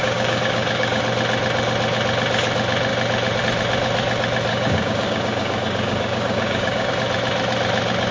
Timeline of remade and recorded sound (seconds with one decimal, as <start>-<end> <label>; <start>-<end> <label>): 0.0-1.0 remade; 1.0-4.5 recorded; 4.5-6.9 remade; 6.9-8.1 recorded